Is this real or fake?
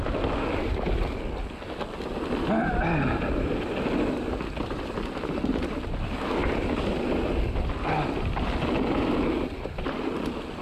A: real